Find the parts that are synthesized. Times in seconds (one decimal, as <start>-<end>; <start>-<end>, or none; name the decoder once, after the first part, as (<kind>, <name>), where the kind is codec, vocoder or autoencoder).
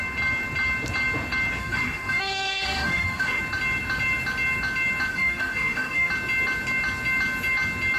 1.6-3.4 (autoencoder, DAC-VAE); 5.1-6.1